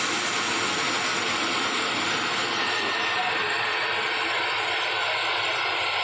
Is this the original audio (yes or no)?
yes